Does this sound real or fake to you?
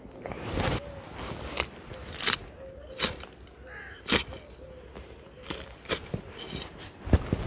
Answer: real